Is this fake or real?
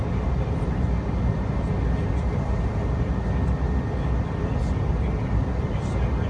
real